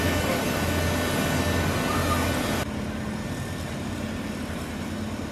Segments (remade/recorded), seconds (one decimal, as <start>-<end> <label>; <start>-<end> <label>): 0.0-5.3 recorded